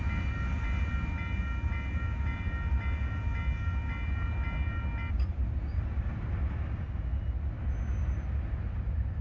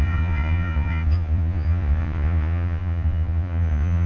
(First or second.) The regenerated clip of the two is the second